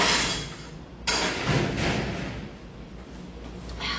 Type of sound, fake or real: real